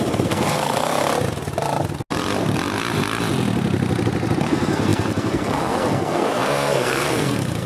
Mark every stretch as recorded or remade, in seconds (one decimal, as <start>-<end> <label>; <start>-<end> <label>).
0.0-1.1 remade; 1.1-4.4 recorded; 4.4-7.7 remade